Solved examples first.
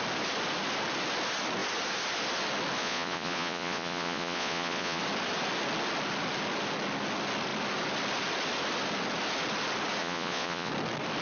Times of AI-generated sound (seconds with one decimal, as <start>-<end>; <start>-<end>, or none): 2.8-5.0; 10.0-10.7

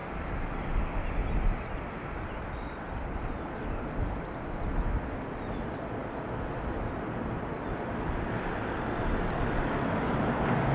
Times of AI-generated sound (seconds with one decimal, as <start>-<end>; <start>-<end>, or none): none

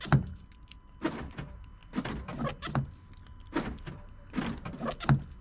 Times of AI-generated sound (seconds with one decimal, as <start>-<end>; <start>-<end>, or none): none